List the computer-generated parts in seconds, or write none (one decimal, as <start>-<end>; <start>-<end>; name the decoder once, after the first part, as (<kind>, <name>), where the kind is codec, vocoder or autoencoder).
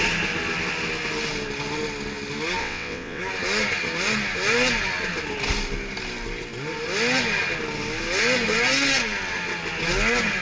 2.6-3.2 (vocoder, WaveNeXt)